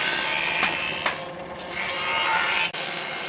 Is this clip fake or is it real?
real